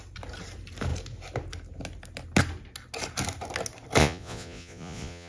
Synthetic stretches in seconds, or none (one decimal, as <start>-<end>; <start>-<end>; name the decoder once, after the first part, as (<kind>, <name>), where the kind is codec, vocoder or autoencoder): 4.0-5.3 (vocoder, Vocos)